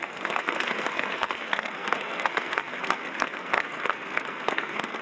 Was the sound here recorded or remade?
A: remade